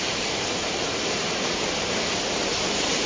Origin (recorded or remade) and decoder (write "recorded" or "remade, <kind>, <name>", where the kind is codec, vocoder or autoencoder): remade, vocoder, BigVGAN v2